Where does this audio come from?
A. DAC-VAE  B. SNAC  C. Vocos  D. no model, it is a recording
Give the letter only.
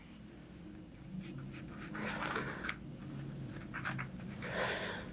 D